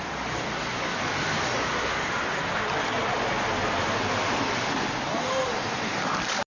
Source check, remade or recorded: recorded